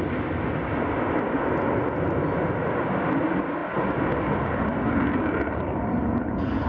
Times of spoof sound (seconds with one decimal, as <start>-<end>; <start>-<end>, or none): none